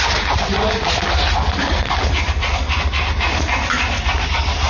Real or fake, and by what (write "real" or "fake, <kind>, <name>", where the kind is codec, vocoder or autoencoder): real